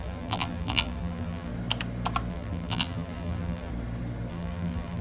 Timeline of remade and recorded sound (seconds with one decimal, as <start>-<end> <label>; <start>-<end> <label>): 0.0-1.5 remade; 1.5-2.3 recorded; 2.3-3.7 remade; 3.7-4.3 recorded; 4.3-5.0 remade